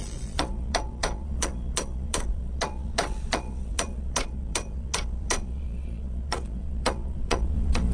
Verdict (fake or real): fake